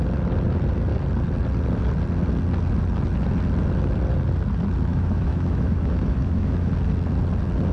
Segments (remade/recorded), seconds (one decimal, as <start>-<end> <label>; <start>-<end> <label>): 0.0-4.9 recorded; 4.9-6.7 remade; 6.7-7.7 recorded